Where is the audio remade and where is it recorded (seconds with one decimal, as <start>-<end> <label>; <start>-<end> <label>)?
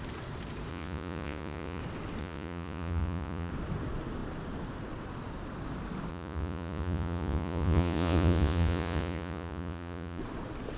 0.0-0.7 recorded; 0.7-1.8 remade; 1.8-2.2 recorded; 2.2-3.5 remade; 3.5-6.1 recorded; 6.1-10.2 remade; 10.2-10.8 recorded